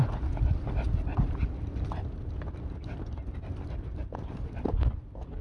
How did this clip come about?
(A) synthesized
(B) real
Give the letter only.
B